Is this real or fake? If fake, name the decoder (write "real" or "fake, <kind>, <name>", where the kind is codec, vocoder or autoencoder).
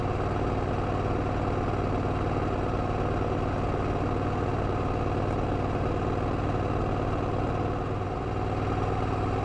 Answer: real